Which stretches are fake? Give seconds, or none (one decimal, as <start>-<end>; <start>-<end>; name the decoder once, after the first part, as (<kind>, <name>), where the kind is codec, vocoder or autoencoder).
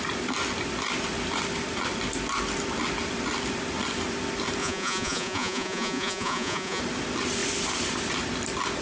4.6-6.8 (vocoder, Vocos)